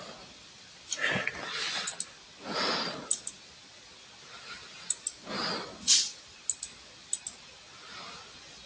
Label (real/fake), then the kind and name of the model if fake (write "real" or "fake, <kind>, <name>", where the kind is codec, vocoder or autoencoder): real